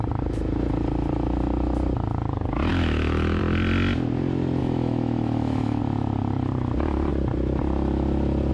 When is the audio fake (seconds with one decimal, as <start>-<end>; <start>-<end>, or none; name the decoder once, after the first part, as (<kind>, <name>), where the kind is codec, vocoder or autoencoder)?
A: 2.7-3.4 (autoencoder, DAC-VAE); 4.6-5.8